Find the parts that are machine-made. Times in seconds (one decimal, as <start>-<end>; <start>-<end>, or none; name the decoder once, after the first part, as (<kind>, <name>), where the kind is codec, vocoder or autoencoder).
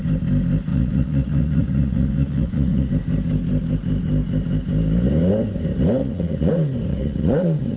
0.7-2.9 (vocoder, Vocos); 6.0-6.5; 6.9-7.8